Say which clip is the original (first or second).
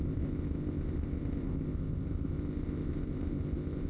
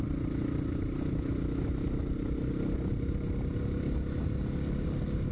second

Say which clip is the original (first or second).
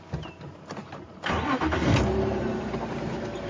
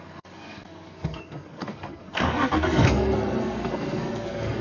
first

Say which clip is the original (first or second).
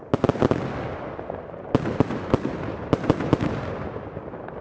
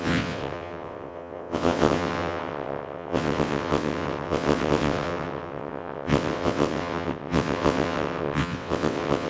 first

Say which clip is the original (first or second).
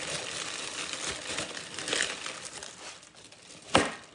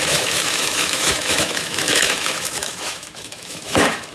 first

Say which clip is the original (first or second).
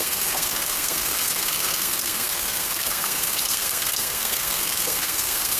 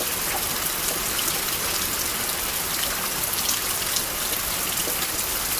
second